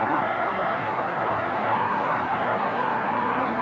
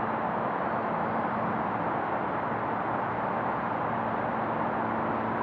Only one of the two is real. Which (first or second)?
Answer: second